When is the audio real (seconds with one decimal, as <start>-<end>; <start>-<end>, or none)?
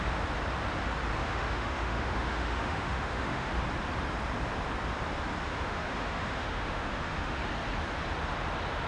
0.0-1.2; 3.5-5.5; 7.4-8.9